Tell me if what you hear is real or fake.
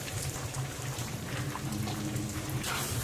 fake